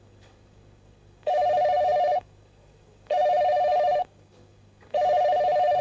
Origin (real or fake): fake